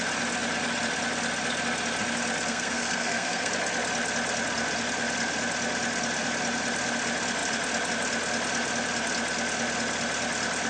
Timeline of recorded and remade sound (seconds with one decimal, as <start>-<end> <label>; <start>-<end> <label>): 0.0-2.5 recorded; 2.5-3.5 remade; 3.5-10.7 recorded